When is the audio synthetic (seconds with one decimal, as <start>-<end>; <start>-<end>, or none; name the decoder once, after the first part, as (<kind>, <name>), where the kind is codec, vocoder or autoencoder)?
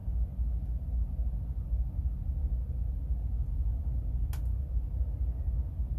none